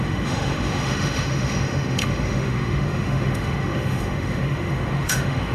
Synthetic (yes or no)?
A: yes